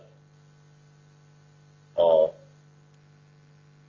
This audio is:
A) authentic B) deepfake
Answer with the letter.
A